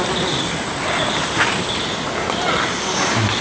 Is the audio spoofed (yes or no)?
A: no